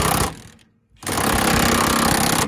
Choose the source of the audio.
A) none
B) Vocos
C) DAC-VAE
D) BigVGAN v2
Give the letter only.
A